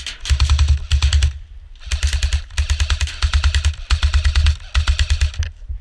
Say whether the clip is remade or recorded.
recorded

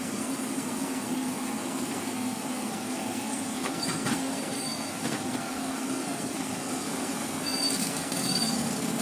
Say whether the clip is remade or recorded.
remade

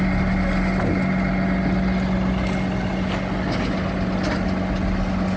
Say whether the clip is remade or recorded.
recorded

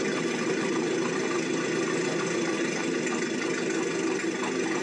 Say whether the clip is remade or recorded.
recorded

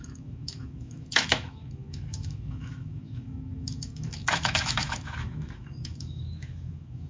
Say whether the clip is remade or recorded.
remade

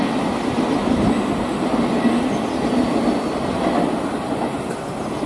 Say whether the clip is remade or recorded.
recorded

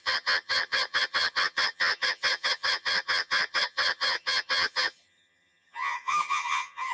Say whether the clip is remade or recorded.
remade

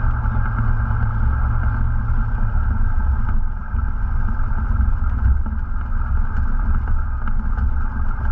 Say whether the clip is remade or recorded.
recorded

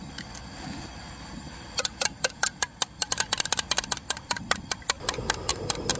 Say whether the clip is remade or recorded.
recorded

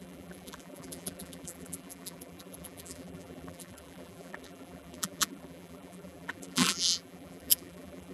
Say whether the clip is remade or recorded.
remade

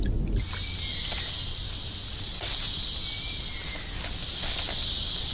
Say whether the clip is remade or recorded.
recorded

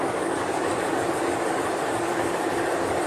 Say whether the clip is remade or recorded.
remade